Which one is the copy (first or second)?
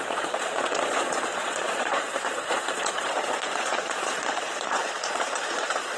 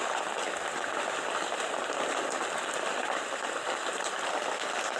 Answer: first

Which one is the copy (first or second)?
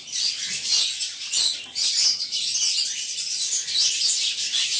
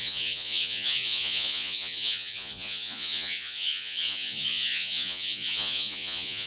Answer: second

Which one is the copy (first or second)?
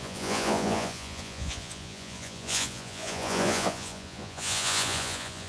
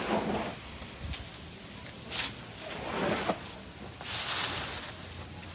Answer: first